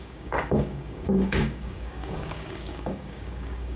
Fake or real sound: fake